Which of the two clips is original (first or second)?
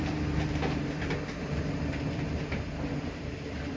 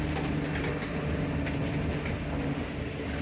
second